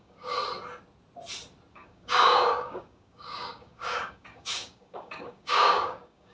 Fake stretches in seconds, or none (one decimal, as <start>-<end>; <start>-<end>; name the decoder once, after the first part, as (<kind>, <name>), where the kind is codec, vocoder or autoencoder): 0.0-0.4 (codec, DAC); 1.7-6.3